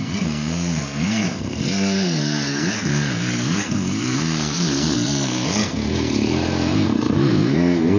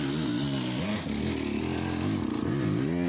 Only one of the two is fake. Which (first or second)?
first